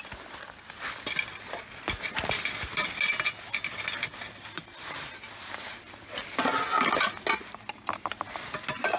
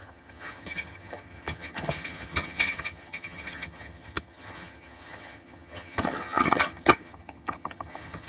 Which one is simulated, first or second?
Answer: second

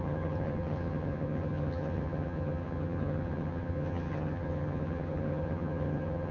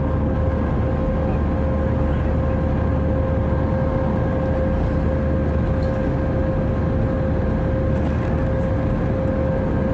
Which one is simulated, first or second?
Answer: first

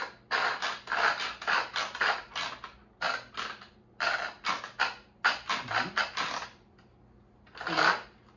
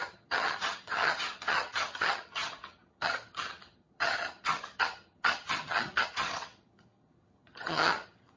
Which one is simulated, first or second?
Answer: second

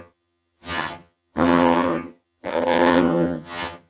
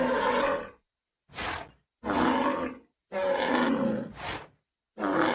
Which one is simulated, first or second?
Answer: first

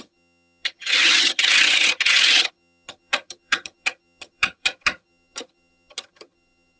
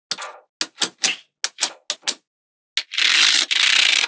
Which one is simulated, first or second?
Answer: first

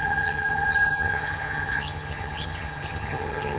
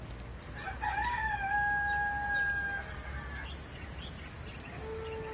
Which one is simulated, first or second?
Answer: first